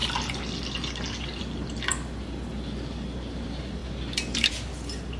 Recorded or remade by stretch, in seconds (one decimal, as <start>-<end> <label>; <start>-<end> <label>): 0.0-5.2 recorded